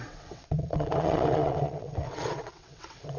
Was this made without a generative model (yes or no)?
no